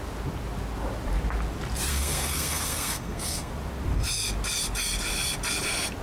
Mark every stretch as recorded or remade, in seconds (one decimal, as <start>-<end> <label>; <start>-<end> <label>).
0.0-1.9 recorded; 1.9-3.5 remade; 3.5-6.0 recorded